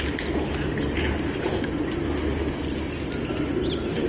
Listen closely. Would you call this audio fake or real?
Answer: real